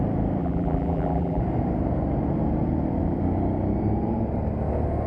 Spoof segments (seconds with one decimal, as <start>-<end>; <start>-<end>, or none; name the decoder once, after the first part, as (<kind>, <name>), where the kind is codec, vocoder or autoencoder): 0.4-1.4 (vocoder, BigVGAN v2)